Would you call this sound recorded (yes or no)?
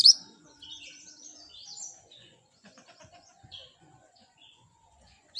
no